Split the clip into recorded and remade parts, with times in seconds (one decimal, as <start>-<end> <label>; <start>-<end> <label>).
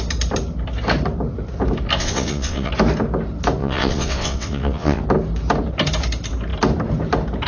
0.0-2.0 recorded; 2.0-2.7 remade; 2.7-3.6 recorded; 3.6-5.0 remade; 5.0-7.5 recorded